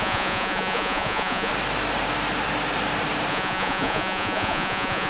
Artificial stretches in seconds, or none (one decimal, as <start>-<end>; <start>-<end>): 0.0-1.5; 3.3-5.1